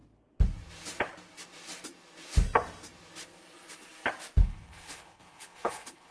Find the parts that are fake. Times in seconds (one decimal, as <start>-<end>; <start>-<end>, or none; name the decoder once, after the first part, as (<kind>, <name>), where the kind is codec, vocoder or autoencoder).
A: 4.4-6.1 (codec, HILCodec)